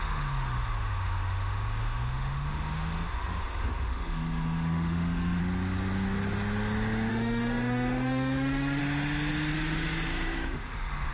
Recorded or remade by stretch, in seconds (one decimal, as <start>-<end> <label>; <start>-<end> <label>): 0.0-5.4 remade; 5.4-7.1 recorded; 7.1-8.8 remade; 8.8-9.5 recorded; 9.5-11.1 remade